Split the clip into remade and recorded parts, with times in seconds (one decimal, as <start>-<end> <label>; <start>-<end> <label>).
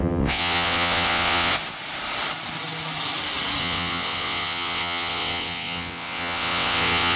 0.0-1.5 remade; 1.5-3.6 recorded; 3.6-7.2 remade